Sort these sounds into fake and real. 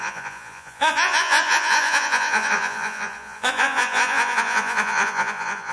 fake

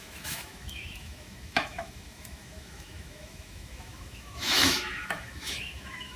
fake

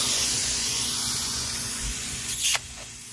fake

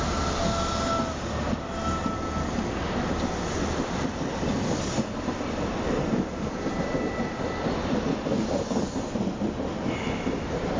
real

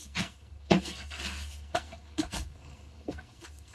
fake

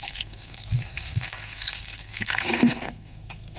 fake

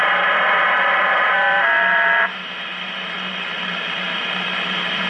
fake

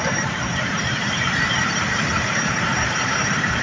fake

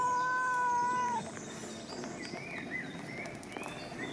real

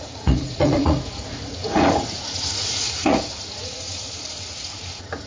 fake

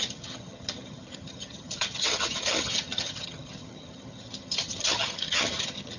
fake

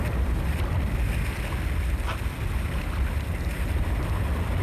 real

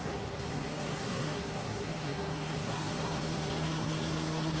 fake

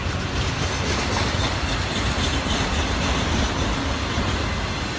real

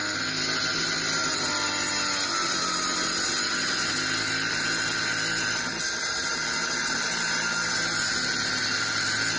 real